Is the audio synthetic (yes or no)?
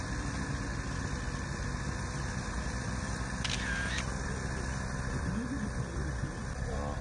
no